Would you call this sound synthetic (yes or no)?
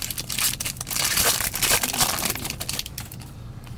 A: no